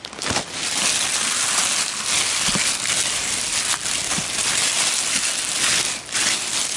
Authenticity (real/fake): real